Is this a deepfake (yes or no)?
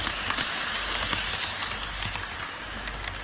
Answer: no